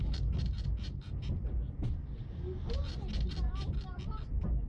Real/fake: real